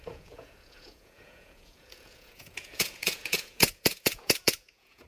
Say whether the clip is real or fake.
fake